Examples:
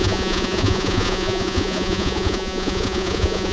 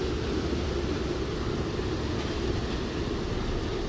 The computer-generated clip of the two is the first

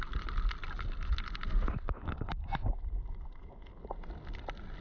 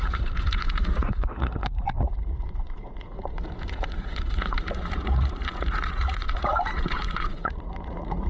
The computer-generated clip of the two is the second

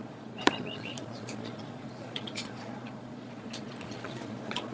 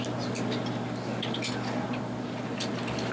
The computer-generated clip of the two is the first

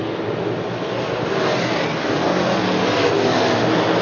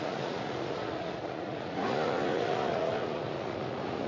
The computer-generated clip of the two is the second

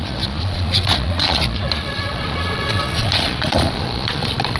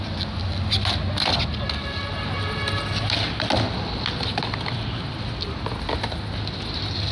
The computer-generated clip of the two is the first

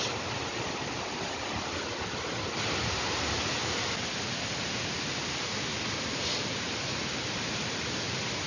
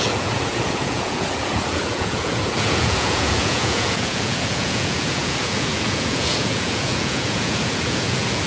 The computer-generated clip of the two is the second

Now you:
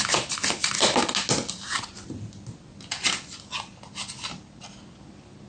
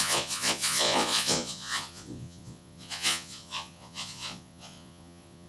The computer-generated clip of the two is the second